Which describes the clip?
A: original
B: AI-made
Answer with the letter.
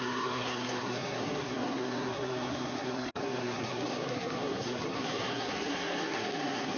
B